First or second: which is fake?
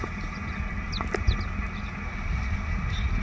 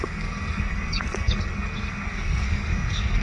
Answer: second